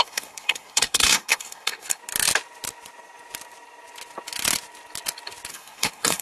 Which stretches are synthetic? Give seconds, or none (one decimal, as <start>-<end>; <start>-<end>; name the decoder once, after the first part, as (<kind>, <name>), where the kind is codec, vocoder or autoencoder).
0.0-2.0 (codec, SNAC); 5.5-6.2